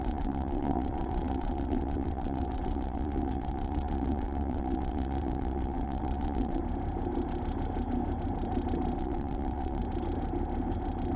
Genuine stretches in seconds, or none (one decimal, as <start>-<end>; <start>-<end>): 6.6-9.0; 9.8-11.2